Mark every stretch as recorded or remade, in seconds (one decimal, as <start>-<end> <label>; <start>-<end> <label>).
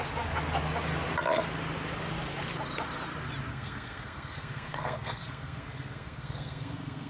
0.0-3.5 recorded; 3.5-7.1 remade